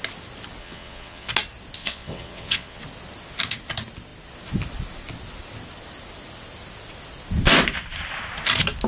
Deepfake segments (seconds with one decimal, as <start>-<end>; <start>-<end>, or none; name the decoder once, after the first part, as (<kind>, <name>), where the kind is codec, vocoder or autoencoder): 0.6-1.3 (vocoder, WaveNeXt); 1.8-2.8